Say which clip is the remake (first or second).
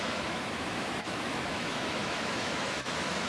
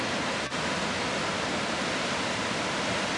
first